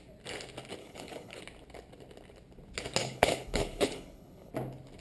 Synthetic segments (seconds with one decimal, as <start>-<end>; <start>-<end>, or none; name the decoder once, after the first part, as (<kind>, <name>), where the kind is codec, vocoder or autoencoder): 0.8-1.4 (codec, HILCodec); 3.0-4.5

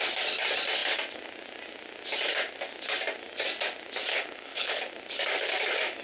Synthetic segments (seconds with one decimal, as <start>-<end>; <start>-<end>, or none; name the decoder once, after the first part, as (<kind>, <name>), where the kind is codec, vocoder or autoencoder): 4.1-4.8 (codec, HILCodec)